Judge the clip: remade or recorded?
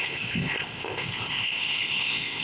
remade